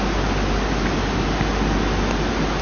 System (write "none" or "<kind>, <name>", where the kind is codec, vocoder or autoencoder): none